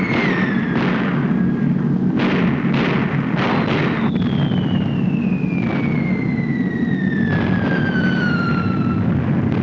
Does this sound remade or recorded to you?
recorded